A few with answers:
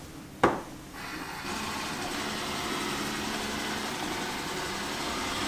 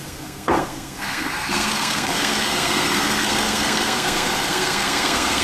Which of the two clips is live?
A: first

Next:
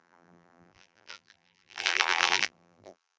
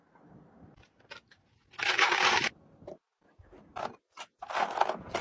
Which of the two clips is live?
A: second